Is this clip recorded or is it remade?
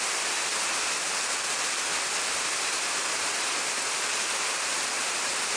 recorded